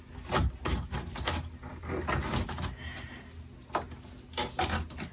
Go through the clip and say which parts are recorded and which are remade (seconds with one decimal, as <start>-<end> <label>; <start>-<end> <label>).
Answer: 0.0-5.1 recorded